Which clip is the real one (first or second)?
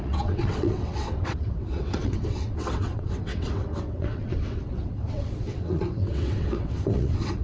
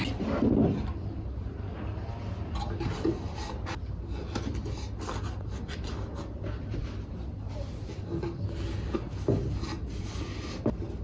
second